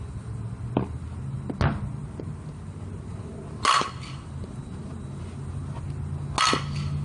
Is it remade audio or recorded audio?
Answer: recorded